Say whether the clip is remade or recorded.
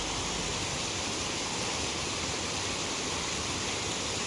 recorded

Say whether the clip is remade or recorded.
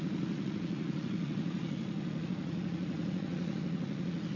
remade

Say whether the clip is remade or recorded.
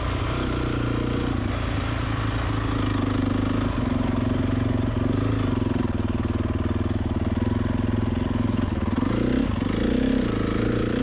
recorded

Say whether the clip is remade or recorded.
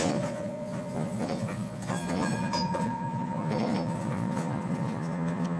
remade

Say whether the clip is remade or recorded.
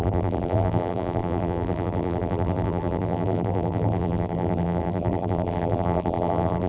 remade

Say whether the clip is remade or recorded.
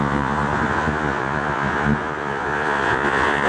remade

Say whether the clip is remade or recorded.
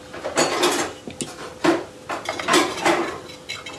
recorded